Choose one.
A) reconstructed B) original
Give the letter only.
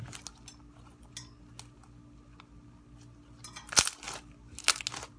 B